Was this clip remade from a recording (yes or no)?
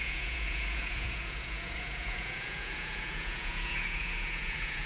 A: yes